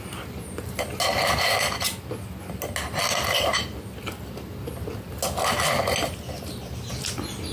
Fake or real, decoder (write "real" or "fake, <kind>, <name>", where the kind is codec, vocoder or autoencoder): real